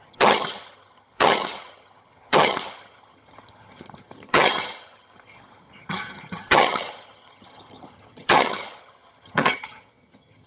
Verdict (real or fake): fake